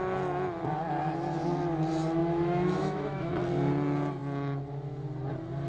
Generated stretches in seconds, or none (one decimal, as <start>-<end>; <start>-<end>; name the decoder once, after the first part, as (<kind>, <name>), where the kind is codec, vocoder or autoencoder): 2.2-3.3 (autoencoder, DAC-VAE)

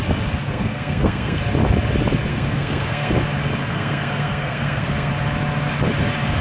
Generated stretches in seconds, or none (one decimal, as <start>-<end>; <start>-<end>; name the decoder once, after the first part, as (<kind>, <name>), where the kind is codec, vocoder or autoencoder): 0.4-1.4 (codec, SNAC); 2.3-3.1; 3.7-5.1

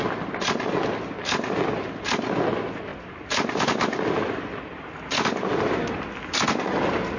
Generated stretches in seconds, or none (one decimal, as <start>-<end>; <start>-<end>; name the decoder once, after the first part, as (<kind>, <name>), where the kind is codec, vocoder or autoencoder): none